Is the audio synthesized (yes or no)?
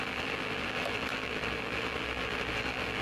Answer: yes